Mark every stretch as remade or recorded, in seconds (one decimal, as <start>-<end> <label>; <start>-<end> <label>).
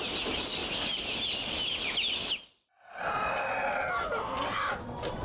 0.0-5.2 recorded